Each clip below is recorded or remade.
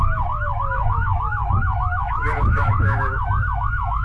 remade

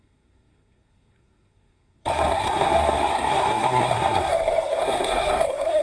remade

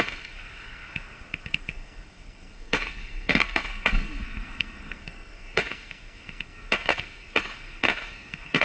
remade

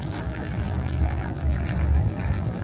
remade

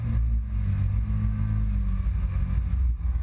recorded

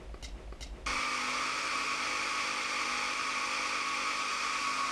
recorded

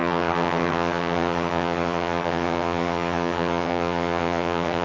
remade